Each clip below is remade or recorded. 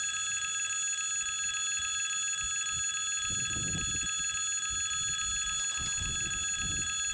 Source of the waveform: recorded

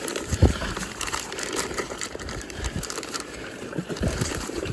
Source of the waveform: remade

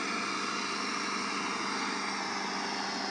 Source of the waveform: recorded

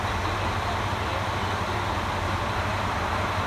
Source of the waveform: recorded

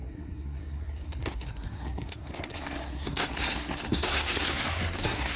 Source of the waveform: remade